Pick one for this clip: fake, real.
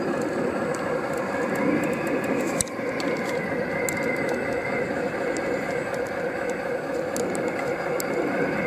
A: real